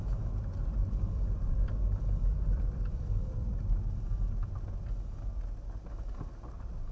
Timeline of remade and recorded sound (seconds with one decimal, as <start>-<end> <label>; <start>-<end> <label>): 0.0-0.8 recorded; 0.8-3.5 remade; 3.5-6.9 recorded